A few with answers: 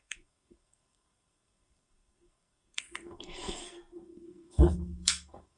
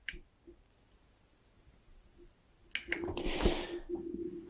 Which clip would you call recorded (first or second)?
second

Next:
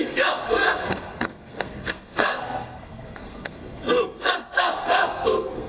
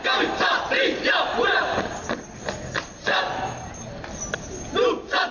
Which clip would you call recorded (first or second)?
second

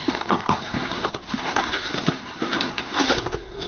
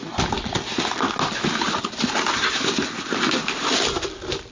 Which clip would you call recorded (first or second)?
second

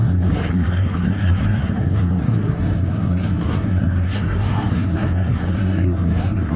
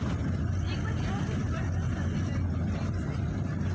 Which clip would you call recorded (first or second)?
second